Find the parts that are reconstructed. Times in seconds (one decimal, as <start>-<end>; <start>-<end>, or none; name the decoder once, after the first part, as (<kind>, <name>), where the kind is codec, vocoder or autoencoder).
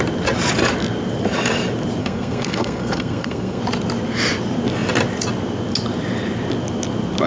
2.0-3.6 (codec, SNAC)